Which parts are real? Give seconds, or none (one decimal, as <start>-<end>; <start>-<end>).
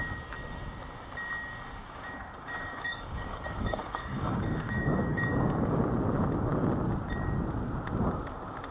0.0-1.8; 5.8-8.7